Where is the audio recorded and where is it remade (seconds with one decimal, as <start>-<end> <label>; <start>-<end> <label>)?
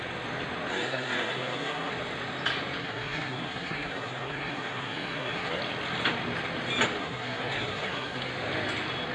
0.0-0.7 recorded; 0.7-1.9 remade; 1.9-2.8 recorded; 2.8-5.6 remade; 5.6-7.0 recorded; 7.0-8.3 remade; 8.3-9.1 recorded